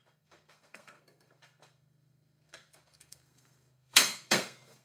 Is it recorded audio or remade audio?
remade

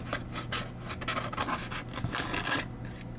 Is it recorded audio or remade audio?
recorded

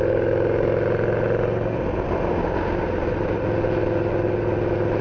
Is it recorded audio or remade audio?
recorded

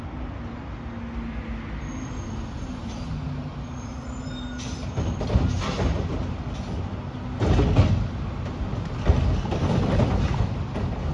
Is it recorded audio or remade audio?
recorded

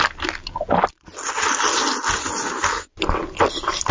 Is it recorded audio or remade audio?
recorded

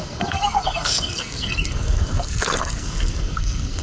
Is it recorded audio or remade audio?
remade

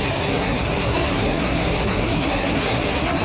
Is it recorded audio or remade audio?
remade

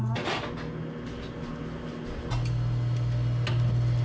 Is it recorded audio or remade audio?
recorded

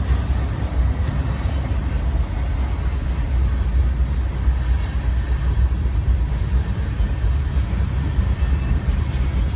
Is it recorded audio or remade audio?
recorded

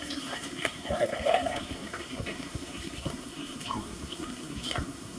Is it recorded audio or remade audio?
remade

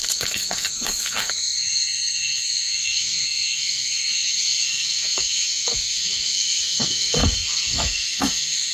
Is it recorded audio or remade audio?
remade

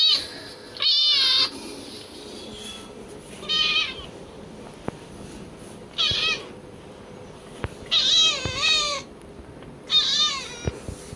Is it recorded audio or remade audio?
recorded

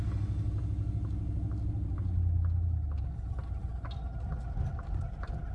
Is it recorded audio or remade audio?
recorded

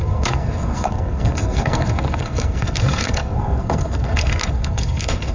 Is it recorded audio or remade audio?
remade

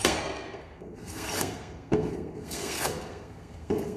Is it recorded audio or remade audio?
remade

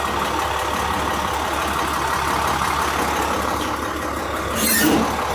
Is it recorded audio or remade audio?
recorded